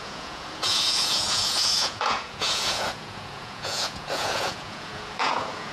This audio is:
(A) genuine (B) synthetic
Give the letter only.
B